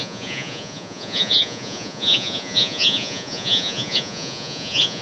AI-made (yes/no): yes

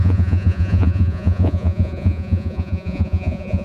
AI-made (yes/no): yes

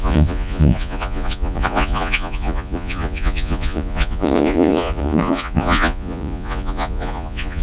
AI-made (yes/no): yes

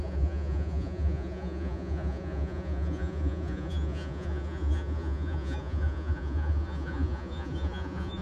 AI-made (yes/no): yes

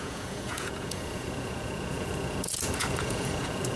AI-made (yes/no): yes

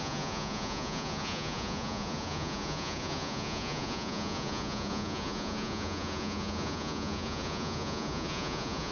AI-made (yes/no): yes